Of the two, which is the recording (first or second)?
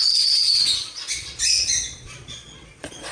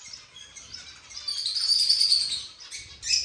second